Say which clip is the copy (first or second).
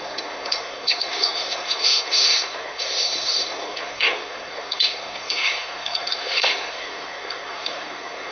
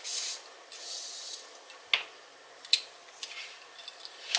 first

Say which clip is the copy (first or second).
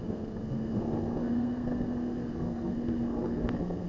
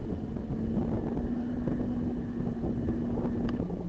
first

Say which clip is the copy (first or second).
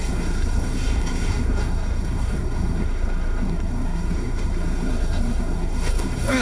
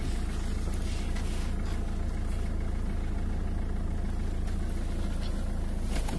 first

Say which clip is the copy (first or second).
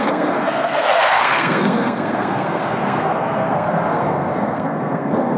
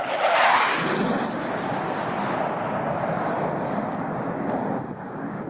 first